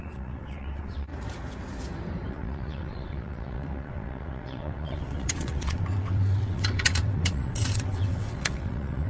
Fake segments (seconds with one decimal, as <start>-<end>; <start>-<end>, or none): 0.0-1.1; 2.3-9.1